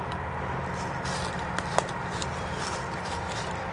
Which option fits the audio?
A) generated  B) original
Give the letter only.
B